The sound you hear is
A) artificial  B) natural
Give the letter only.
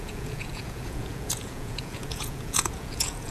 A